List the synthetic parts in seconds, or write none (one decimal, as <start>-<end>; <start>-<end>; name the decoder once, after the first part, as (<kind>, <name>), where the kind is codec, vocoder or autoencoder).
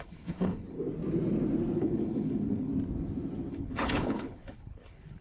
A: 0.0-0.8 (codec, HILCodec); 1.8-2.7; 3.5-5.2